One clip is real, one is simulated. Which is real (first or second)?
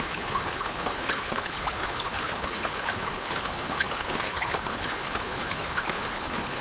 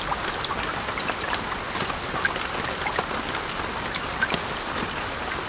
second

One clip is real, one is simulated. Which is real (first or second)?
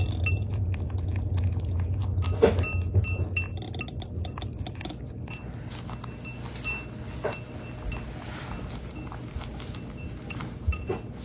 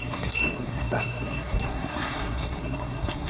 first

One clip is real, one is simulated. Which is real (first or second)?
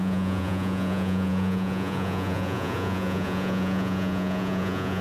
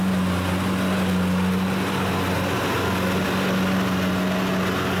second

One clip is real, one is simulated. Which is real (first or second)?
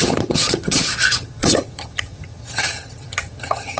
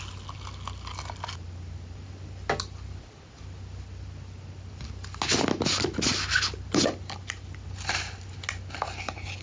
second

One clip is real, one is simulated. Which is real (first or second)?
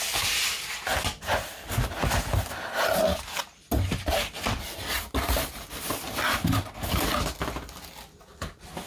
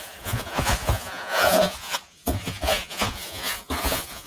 first